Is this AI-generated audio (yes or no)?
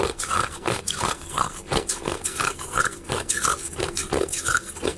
yes